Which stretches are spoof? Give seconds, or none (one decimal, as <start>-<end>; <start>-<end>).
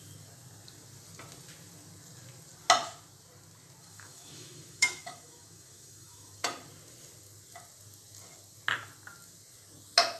3.8-6.4